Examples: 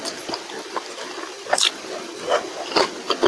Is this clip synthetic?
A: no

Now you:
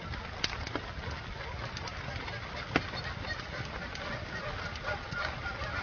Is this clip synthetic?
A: no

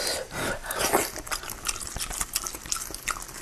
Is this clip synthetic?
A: no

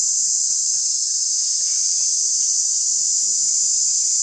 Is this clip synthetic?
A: no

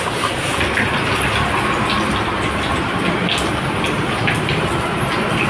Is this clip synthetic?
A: no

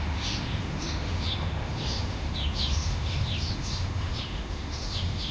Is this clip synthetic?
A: yes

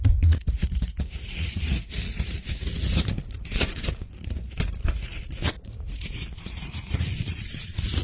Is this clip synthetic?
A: yes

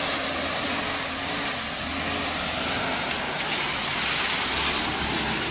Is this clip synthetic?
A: no